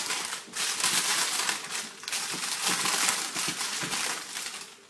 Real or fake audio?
real